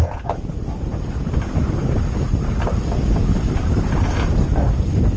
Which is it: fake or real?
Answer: real